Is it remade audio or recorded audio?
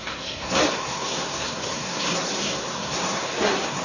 remade